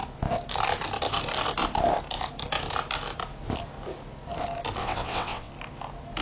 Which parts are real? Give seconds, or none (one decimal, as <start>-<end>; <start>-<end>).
0.0-4.8; 5.5-6.2

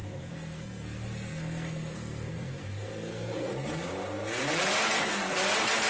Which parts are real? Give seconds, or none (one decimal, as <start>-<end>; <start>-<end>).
3.5-5.9

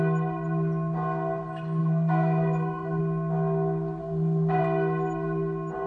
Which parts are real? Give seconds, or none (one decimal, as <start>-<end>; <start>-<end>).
0.0-1.8; 3.0-4.0; 4.6-5.9

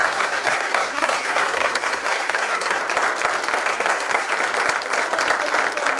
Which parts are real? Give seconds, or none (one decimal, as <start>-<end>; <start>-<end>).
2.8-3.7; 4.3-6.0

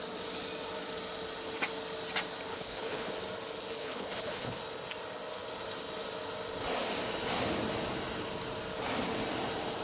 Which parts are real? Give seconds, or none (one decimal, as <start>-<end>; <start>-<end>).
0.0-2.5; 3.1-3.7; 4.6-9.8

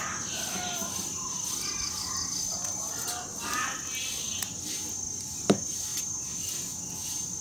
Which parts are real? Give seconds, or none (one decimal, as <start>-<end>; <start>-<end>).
0.0-7.4

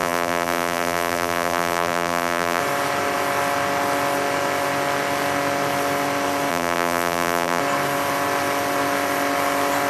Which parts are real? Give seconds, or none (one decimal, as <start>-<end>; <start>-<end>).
2.6-6.5; 7.6-9.9